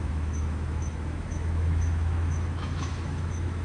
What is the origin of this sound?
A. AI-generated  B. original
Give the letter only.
A